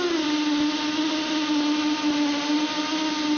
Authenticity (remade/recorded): recorded